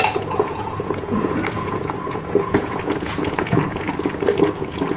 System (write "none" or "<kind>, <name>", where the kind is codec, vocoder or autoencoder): vocoder, Vocos